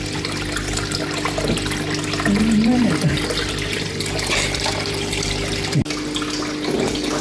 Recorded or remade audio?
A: recorded